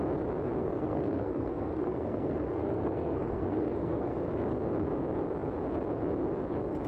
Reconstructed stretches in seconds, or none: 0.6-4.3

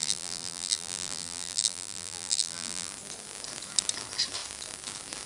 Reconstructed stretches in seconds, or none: 0.0-2.9

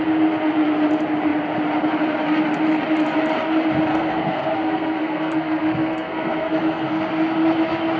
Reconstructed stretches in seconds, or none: 3.9-7.0

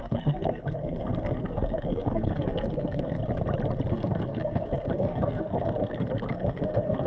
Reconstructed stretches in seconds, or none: 0.0-3.2; 3.9-7.1

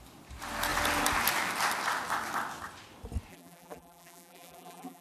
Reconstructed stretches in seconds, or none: 3.3-5.0

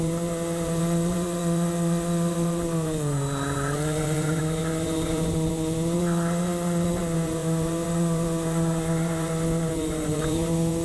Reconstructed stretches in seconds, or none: 0.0-10.8

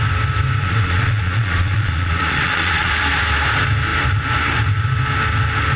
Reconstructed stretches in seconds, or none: 0.6-2.9

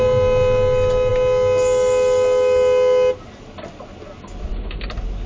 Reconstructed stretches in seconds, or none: none